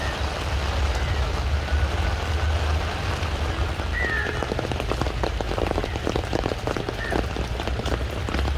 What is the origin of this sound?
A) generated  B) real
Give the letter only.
B